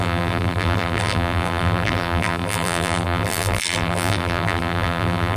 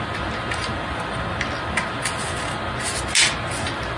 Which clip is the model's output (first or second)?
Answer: first